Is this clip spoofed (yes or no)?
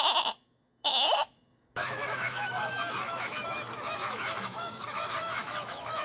yes